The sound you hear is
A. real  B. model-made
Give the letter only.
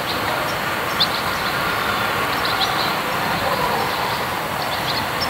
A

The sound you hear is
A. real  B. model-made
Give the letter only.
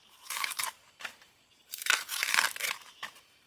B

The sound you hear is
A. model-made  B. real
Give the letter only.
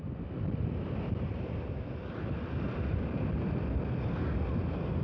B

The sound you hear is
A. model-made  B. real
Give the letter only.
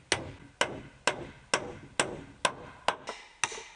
B